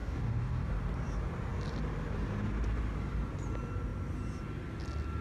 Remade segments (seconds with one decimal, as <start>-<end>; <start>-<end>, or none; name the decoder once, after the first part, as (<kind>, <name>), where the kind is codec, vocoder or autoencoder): 0.0-0.7 (codec, DAC)